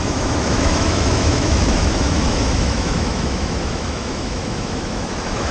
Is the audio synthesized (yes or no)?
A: yes